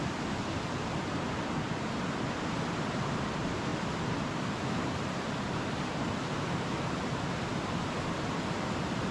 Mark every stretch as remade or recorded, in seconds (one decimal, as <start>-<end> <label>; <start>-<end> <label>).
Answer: 0.0-9.1 remade